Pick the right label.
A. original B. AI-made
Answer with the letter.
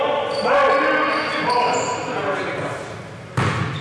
A